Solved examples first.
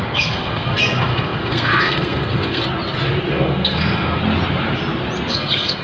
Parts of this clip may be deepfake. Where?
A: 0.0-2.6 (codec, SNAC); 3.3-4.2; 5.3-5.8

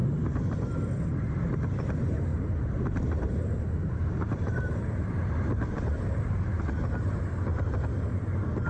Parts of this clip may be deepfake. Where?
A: 2.3-6.6 (vocoder, BigVGAN v2); 7.5-8.1

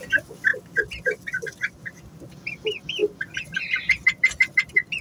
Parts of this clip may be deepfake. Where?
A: 0.5-2.3 (vocoder, BigVGAN v2); 3.0-3.7

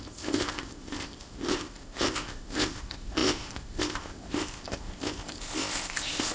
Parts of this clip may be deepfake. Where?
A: 0.0-6.3 (codec, ZipCodec)

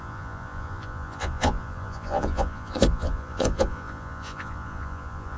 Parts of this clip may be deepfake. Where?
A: 0.0-5.4 (vocoder, Vocos)